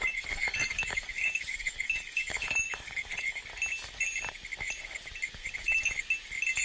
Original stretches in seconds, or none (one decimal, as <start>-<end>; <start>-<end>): 3.5-6.6